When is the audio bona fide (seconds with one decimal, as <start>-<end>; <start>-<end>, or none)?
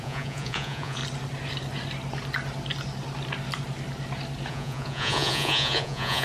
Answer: 1.0-4.5